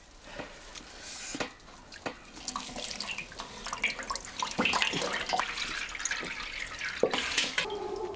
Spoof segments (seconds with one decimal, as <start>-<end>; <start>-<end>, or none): 0.0-0.7; 5.6-8.2